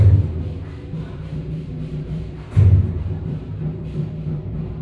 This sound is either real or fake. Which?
fake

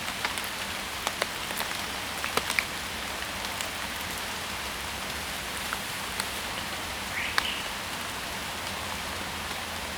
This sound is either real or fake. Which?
real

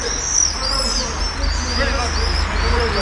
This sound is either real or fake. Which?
real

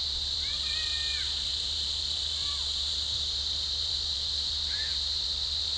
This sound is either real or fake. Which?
fake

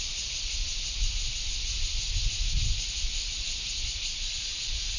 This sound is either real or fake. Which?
real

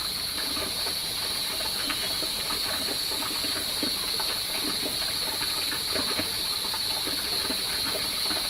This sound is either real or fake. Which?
real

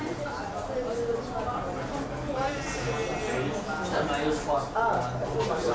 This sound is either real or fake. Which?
real